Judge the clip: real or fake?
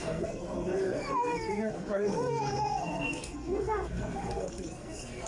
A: fake